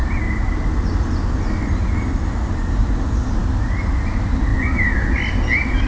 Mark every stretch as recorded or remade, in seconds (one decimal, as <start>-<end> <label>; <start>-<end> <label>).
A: 0.0-5.9 recorded